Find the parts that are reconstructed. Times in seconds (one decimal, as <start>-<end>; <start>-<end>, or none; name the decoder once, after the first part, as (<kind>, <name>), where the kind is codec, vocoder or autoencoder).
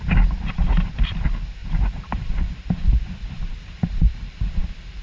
1.6-4.6 (vocoder, BigVGAN v2)